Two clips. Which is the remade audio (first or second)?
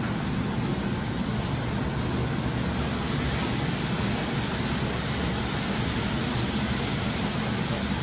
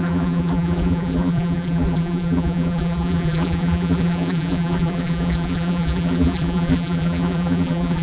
second